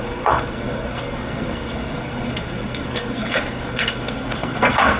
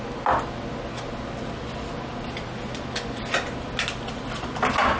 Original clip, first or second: second